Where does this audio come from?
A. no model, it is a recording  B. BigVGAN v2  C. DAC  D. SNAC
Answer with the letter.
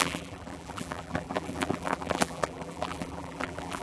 B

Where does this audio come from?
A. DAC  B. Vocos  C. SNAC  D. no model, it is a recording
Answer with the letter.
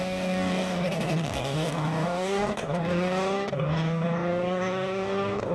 A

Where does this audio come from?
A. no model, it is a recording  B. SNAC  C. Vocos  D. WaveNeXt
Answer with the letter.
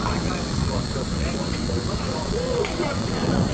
D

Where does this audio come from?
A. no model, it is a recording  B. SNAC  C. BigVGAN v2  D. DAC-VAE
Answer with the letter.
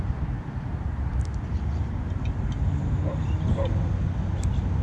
A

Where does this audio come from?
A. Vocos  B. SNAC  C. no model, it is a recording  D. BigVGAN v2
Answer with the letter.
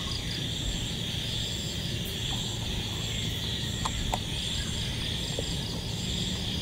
C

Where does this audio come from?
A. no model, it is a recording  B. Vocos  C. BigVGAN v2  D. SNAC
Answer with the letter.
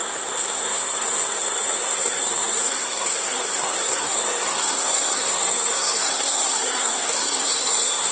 D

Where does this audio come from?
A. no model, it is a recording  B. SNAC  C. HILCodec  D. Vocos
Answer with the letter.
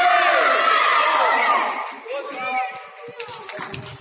A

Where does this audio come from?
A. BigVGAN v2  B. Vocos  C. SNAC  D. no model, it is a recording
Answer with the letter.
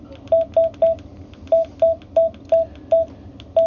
D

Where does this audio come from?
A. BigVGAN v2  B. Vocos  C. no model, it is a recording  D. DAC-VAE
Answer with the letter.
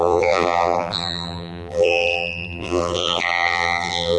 A